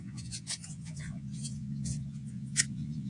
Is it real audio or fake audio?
fake